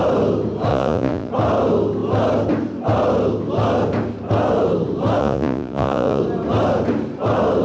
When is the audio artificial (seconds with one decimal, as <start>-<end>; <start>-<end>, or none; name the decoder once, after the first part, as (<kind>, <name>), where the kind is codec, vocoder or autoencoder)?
0.7-1.3 (vocoder, Vocos); 5.2-6.2